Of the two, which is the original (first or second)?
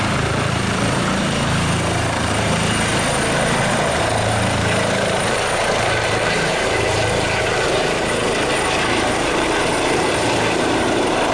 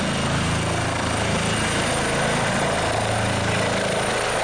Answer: second